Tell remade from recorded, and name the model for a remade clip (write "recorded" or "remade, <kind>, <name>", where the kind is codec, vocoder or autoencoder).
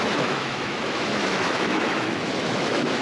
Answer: remade, autoencoder, DAC-VAE